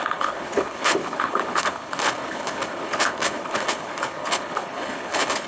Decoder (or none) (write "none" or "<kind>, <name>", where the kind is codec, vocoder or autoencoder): codec, HILCodec